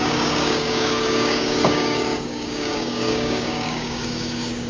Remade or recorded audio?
remade